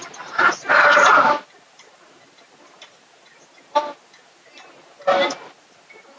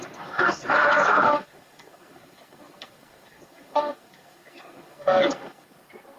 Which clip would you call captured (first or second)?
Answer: first